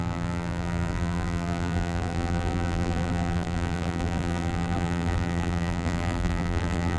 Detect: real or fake fake